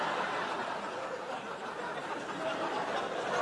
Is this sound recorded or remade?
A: recorded